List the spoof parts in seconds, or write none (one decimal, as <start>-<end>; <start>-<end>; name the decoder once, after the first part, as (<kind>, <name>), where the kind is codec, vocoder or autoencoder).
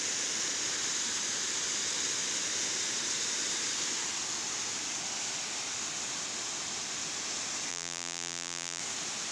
7.7-8.8 (vocoder, BigVGAN v2)